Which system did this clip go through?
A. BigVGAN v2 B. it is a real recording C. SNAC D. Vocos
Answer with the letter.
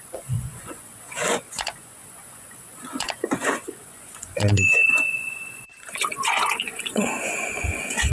D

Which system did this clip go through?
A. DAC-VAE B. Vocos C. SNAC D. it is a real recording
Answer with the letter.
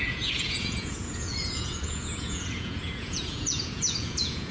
B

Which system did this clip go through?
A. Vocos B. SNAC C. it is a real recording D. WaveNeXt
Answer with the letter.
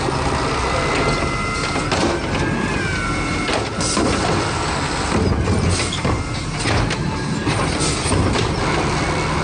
C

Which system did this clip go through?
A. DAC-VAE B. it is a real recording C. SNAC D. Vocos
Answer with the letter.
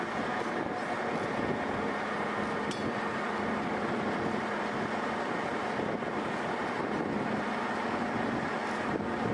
B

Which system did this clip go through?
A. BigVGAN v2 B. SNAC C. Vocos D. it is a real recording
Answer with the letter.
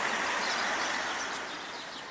D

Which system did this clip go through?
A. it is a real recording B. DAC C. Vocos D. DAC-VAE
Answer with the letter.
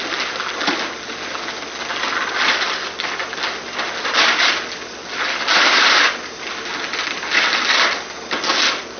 A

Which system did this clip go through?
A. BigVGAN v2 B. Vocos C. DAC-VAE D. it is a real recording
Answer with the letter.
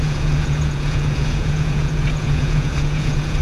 B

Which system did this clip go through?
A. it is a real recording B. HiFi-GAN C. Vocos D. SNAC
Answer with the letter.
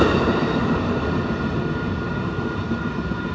A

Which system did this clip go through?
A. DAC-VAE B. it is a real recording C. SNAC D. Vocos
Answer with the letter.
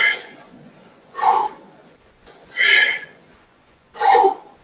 D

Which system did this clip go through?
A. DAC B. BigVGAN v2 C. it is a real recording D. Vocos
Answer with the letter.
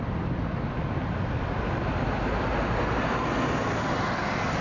C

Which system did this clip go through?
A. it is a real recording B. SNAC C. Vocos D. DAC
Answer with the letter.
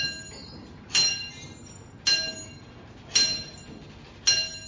A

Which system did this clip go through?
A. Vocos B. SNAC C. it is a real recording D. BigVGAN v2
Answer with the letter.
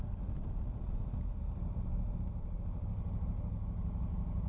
C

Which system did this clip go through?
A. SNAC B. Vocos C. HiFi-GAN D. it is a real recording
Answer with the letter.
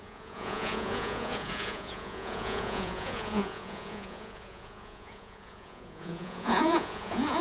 B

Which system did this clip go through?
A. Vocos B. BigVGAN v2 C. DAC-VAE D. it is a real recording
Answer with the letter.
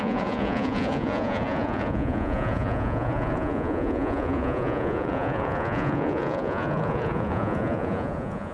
A